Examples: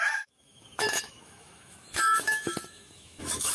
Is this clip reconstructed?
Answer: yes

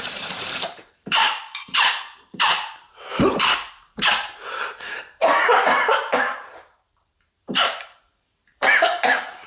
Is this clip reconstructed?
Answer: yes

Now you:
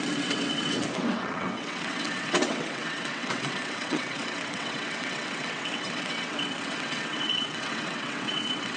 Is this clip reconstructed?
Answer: yes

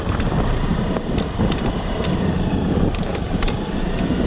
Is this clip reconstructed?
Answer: yes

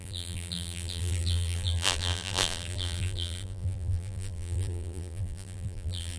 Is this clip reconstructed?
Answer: yes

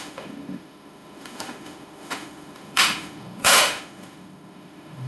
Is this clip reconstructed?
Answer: yes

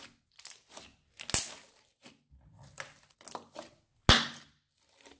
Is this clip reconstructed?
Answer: no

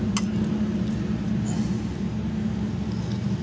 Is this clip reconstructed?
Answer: no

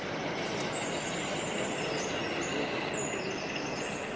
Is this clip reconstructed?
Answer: no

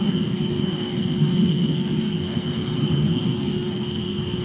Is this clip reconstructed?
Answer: yes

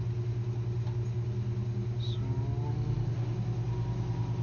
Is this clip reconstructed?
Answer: no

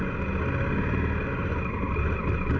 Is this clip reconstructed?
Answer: no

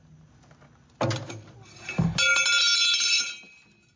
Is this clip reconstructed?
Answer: no